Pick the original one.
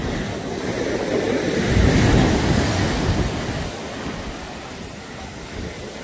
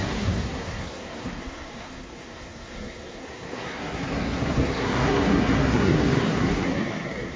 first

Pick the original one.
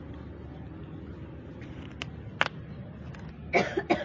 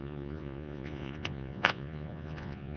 first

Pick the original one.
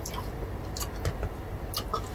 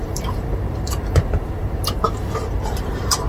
first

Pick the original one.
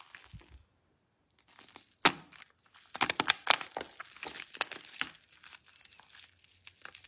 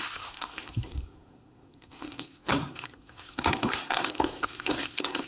first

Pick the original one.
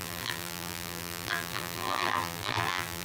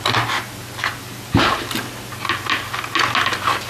second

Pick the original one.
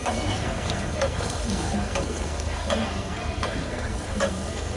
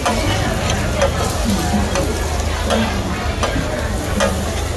second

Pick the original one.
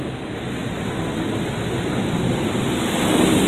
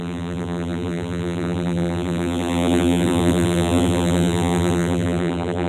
first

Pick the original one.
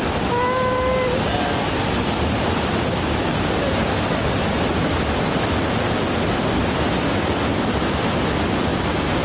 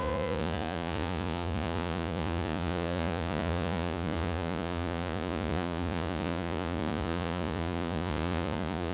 first